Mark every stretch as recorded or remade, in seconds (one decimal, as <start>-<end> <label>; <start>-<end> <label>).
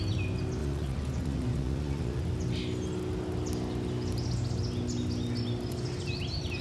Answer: 0.0-0.6 recorded; 0.6-2.2 remade; 2.2-6.6 recorded